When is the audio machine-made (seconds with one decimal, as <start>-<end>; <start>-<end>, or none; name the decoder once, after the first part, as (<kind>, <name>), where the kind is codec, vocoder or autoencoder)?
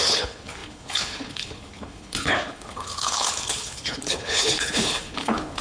0.0-5.6 (codec, HILCodec)